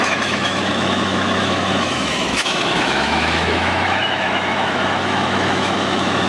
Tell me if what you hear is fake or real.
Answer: fake